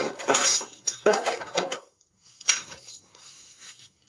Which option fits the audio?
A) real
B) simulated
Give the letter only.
B